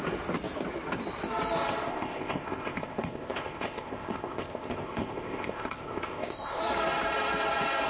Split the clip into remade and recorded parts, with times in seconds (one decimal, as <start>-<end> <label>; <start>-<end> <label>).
0.0-1.9 recorded; 1.9-6.6 remade; 6.6-7.9 recorded